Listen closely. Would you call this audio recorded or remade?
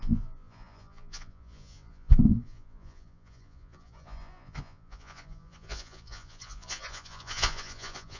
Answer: remade